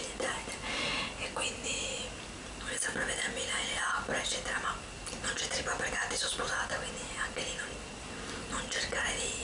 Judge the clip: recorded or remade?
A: recorded